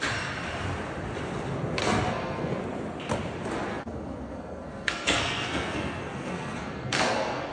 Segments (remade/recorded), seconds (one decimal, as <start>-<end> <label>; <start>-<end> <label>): 0.0-1.8 recorded; 1.8-2.6 remade; 2.6-3.7 recorded; 3.7-7.5 remade